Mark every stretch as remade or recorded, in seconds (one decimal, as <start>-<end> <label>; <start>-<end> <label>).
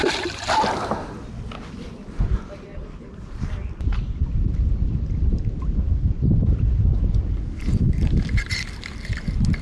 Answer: 0.0-2.7 recorded; 2.7-5.4 remade; 5.4-9.6 recorded